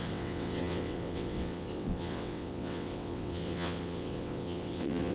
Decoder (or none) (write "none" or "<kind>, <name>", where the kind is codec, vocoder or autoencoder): vocoder, WaveNeXt